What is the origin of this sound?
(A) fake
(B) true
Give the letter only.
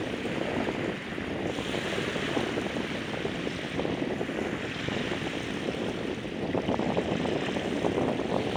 B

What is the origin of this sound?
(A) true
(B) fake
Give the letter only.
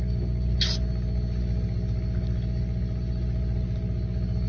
A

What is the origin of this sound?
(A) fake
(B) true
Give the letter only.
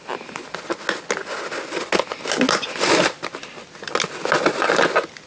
B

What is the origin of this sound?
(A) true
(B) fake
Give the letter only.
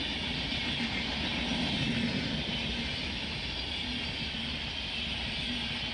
A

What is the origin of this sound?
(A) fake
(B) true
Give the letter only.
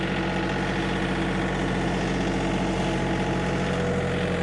B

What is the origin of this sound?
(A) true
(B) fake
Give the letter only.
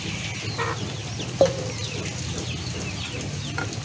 A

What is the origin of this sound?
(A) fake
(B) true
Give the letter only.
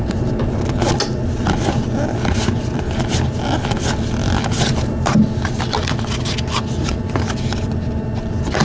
B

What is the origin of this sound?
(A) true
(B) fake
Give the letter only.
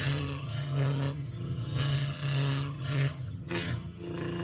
B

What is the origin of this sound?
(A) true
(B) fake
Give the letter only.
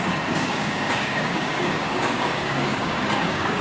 B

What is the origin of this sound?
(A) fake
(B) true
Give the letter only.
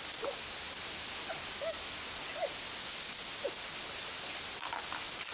B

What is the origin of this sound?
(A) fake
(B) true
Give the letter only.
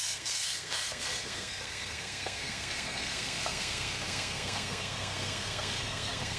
A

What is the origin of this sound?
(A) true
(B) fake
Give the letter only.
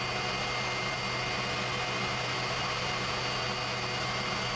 A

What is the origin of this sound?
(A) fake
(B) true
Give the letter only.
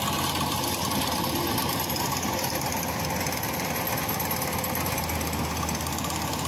B